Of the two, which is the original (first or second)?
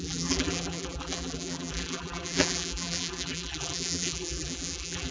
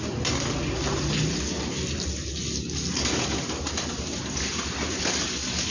second